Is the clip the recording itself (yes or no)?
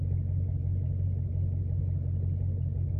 yes